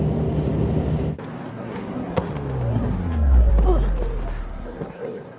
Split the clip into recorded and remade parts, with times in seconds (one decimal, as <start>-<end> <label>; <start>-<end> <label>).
0.0-1.5 recorded; 1.5-2.3 remade; 2.3-2.7 recorded; 2.7-3.5 remade; 3.5-4.4 recorded; 4.4-5.4 remade